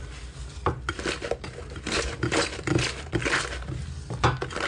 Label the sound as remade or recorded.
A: recorded